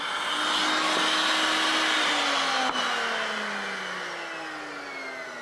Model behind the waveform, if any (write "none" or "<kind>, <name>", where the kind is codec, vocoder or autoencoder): none